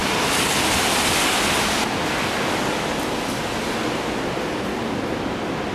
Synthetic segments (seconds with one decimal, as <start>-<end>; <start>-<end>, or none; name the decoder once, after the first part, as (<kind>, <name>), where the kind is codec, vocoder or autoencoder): none